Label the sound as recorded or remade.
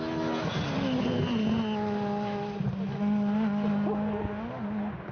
recorded